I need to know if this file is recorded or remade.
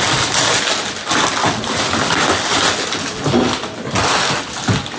recorded